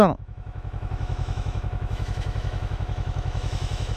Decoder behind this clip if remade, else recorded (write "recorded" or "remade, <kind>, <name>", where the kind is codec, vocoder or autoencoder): remade, autoencoder, DAC-VAE